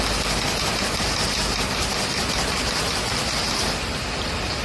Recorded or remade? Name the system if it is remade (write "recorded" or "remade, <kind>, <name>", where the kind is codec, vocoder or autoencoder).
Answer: remade, vocoder, BigVGAN v2